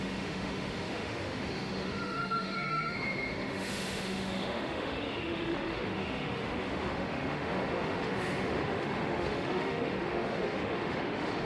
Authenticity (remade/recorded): remade